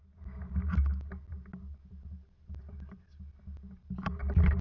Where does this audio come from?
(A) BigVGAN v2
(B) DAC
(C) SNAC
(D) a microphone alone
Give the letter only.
D